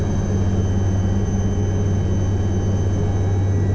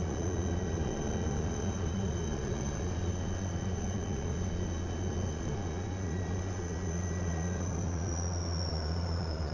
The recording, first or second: first